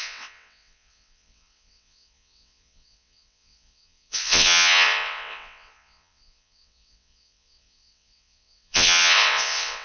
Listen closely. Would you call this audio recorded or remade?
remade